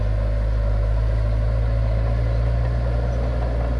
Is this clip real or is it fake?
real